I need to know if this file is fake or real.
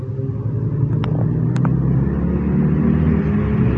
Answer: real